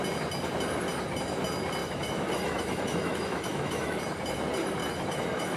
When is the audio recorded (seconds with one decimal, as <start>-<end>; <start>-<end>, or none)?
0.0-1.8; 4.0-4.8